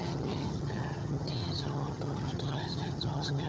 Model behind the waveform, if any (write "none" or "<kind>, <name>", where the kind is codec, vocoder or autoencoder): vocoder, HiFi-GAN